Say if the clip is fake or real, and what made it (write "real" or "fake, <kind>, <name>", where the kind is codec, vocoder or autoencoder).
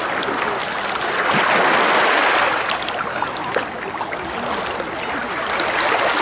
real